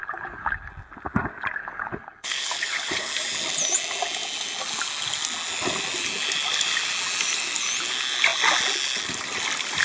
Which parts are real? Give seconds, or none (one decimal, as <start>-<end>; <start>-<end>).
0.7-1.6; 3.1-9.8

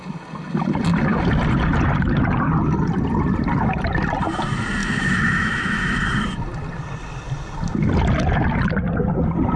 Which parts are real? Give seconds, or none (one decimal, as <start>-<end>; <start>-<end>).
0.0-4.8; 6.0-9.6

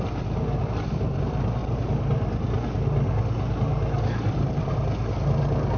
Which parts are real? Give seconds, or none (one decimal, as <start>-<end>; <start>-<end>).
0.0-1.6; 4.7-5.8

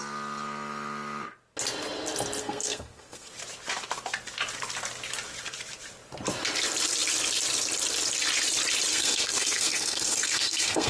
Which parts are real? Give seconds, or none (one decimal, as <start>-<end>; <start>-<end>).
0.0-2.4; 3.3-8.9